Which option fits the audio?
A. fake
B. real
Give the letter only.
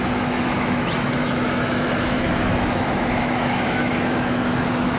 A